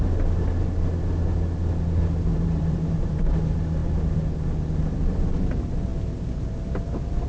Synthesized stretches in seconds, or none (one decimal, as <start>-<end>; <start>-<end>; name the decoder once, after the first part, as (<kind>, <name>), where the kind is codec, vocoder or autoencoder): 2.3-3.2 (vocoder, BigVGAN v2)